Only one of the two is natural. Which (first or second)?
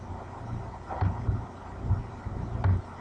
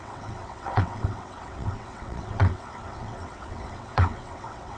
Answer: first